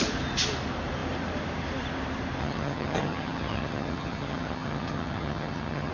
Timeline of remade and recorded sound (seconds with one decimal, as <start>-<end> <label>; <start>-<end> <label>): 0.0-2.4 recorded; 2.4-5.9 remade